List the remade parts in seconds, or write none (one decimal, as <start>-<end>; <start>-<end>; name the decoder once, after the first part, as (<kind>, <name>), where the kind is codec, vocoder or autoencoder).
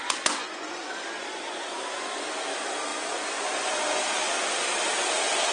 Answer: 0.0-2.3 (vocoder, Vocos); 2.9-4.0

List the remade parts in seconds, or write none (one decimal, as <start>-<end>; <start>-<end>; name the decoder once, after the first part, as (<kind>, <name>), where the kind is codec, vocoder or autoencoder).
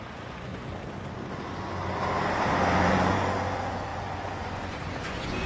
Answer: 0.0-0.5 (vocoder, Vocos); 2.9-5.5